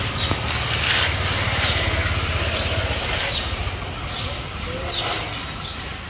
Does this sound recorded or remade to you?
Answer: recorded